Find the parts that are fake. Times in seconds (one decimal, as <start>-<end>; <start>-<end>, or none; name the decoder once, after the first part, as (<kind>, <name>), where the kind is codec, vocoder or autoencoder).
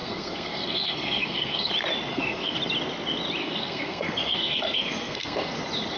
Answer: 0.0-1.7 (codec, SNAC); 2.1-2.6; 3.4-5.6